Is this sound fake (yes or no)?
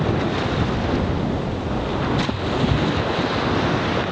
no